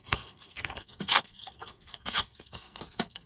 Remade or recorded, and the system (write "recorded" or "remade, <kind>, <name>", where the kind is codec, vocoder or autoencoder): remade, codec, SNAC